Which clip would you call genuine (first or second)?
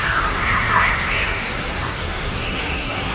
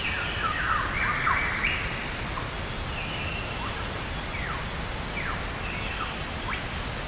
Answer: second